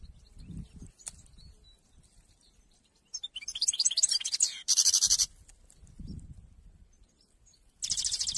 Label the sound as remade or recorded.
remade